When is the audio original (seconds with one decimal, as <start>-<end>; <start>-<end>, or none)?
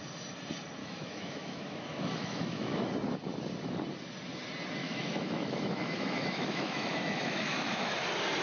0.0-0.8; 2.9-4.8; 7.9-8.4